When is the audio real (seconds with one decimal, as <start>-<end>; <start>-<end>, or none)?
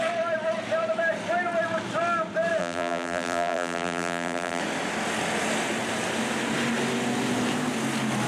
0.0-2.6; 4.6-8.3